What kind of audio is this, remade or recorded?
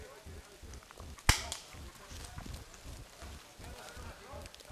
recorded